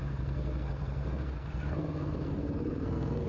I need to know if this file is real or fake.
fake